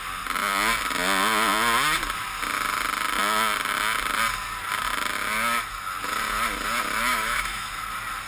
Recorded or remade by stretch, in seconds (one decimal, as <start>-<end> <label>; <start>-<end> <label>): 0.0-7.1 recorded; 7.1-7.7 remade; 7.7-8.3 recorded